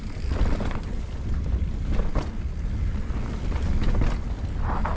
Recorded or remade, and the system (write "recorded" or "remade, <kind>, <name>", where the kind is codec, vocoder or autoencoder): recorded